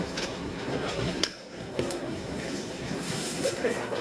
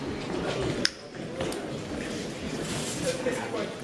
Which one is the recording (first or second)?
second